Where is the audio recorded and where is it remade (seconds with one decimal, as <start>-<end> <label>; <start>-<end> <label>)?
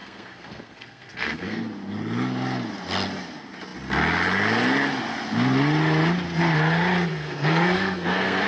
0.0-1.6 remade; 1.6-7.1 recorded; 7.1-8.5 remade